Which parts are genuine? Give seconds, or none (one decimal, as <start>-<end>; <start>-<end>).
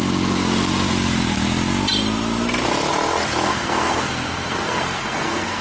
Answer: 0.0-3.5